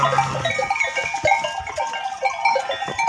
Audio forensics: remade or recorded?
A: recorded